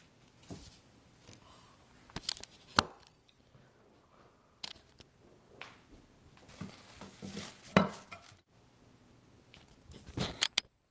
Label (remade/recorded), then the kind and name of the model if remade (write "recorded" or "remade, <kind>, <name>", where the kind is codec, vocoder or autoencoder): recorded